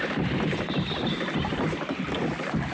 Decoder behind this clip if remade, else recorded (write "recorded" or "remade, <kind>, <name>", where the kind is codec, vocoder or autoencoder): recorded